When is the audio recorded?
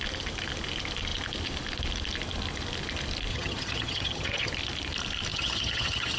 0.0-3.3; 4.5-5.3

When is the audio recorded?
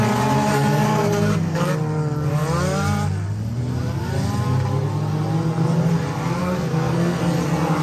0.0-0.5; 1.7-6.4; 7.2-7.8